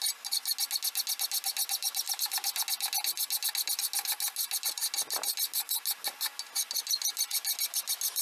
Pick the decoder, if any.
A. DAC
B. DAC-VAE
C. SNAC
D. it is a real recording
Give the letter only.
D